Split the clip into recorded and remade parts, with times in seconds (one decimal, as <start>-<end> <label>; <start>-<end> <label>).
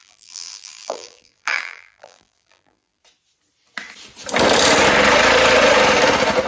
0.0-3.0 remade; 3.0-6.5 recorded